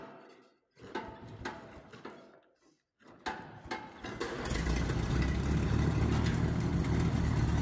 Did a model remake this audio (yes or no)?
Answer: no